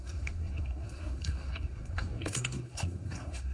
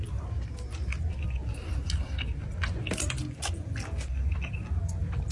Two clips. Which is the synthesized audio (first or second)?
first